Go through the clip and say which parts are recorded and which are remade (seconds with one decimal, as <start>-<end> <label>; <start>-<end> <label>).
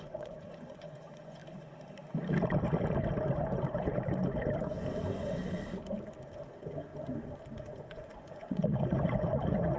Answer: 0.0-1.4 remade; 1.4-6.5 recorded; 6.5-6.9 remade; 6.9-7.6 recorded; 7.6-9.8 remade